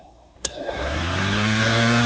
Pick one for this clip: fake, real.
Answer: fake